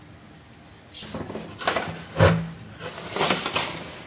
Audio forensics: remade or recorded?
recorded